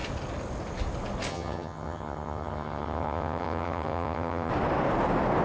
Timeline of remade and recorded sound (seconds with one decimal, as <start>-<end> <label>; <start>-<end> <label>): 0.0-1.3 recorded; 1.3-4.5 remade; 4.5-5.4 recorded